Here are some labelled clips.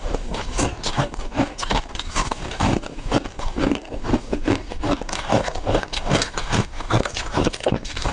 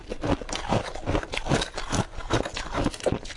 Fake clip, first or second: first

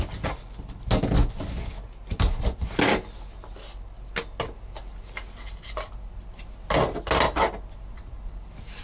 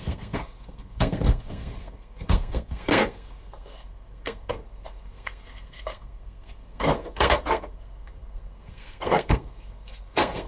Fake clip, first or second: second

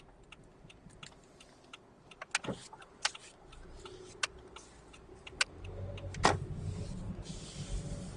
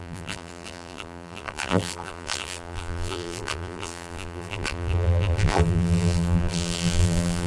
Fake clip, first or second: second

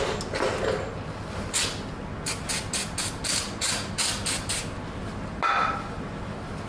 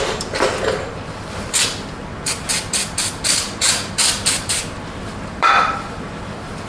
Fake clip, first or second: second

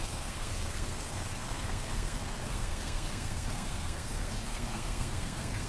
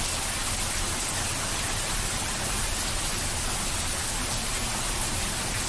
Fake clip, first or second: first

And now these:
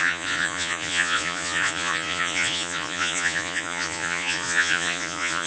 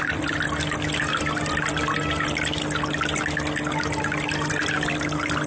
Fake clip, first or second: first